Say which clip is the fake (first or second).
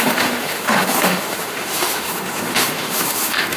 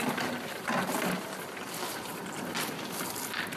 first